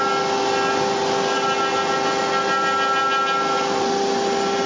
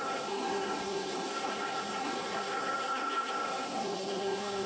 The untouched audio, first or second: first